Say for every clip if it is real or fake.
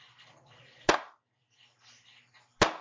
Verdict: real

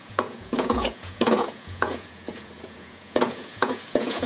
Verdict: fake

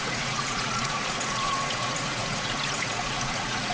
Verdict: fake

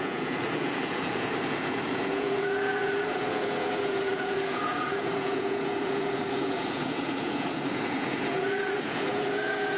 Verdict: fake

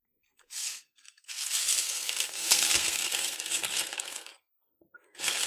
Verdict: fake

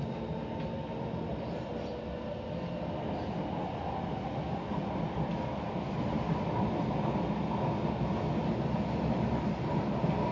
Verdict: real